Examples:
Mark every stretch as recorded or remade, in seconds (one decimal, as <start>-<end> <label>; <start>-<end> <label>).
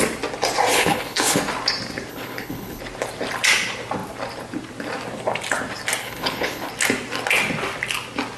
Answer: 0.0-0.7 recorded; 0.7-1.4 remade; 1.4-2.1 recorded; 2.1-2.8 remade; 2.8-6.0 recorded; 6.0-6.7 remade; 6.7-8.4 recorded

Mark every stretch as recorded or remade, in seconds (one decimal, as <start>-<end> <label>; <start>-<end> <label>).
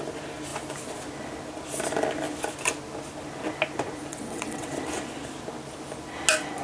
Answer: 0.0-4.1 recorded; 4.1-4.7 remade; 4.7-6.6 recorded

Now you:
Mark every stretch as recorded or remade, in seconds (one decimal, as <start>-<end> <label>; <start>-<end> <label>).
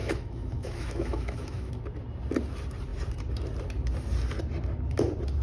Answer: 0.0-1.7 remade; 1.7-5.4 recorded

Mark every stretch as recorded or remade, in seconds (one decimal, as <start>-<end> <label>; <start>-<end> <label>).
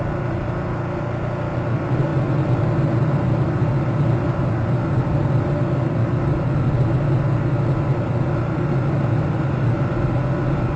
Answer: 0.0-10.8 recorded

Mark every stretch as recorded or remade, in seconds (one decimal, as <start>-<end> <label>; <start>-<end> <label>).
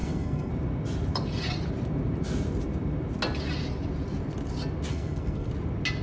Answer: 0.0-0.5 remade; 0.5-4.9 recorded; 4.9-5.5 remade; 5.5-6.0 recorded